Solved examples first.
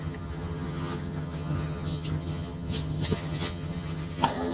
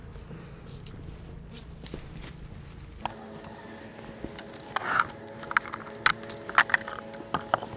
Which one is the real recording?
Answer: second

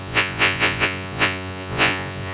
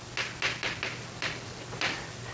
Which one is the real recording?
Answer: second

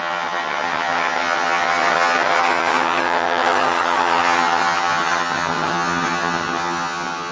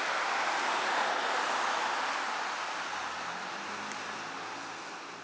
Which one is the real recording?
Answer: second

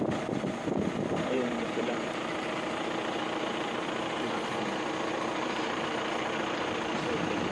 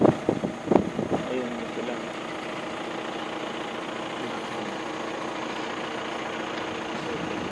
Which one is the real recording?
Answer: second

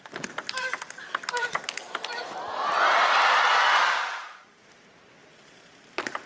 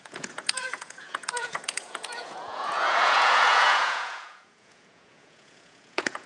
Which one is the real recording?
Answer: first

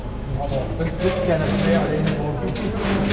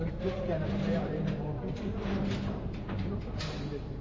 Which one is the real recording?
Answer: first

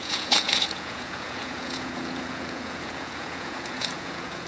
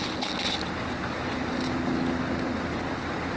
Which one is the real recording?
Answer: second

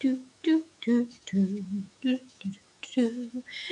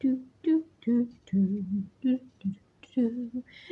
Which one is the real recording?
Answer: second